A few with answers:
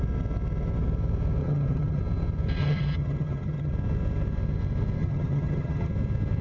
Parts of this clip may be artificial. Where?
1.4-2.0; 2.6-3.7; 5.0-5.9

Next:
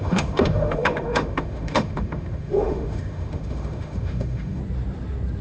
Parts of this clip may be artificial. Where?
0.0-4.6

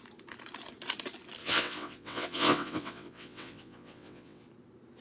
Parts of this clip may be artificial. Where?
1.4-4.4

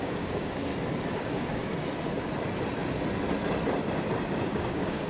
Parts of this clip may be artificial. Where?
0.0-0.7; 1.2-1.6; 4.3-5.1

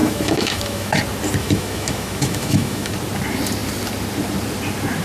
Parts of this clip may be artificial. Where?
0.0-1.0; 1.4-2.9

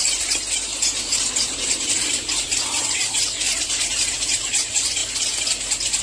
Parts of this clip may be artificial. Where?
0.0-5.0